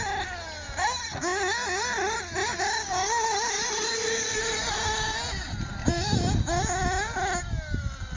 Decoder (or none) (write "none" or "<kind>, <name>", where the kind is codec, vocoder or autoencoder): none